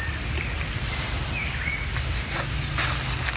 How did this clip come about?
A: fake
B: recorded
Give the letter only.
B